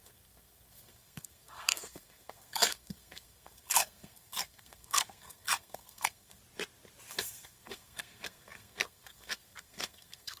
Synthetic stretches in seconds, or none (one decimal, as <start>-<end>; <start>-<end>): 0.0-6.4; 7.1-10.4